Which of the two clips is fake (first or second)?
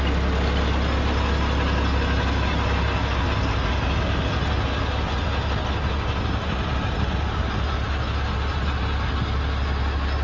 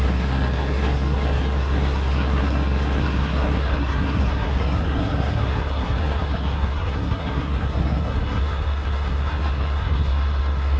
second